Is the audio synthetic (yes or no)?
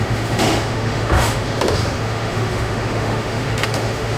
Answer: yes